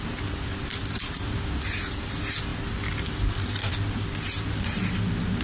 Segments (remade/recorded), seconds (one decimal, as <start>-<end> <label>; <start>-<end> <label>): 0.0-5.4 recorded